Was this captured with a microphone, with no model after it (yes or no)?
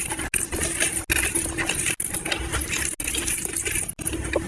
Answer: yes